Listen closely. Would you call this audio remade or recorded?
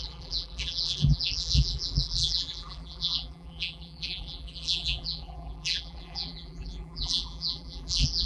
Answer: remade